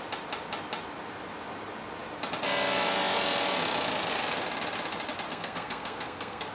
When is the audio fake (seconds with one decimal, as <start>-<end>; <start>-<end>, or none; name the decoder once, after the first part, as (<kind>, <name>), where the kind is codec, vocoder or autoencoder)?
5.3-6.5 (codec, SNAC)